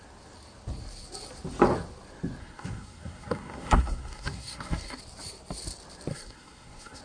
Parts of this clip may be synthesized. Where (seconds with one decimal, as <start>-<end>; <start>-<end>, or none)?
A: 2.4-5.0; 6.1-7.0